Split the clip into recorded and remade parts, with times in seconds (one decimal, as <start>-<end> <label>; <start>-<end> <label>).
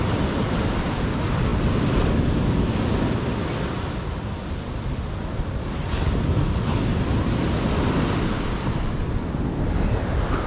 0.0-10.5 recorded